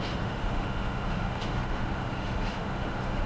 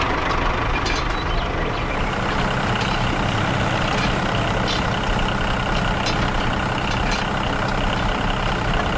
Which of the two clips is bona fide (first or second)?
second